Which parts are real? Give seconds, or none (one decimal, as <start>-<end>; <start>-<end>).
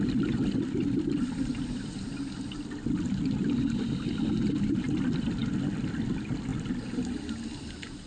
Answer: 0.0-5.4; 6.1-8.1